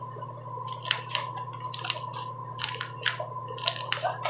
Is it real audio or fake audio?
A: real